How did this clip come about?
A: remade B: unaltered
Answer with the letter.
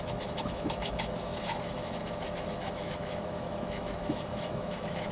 A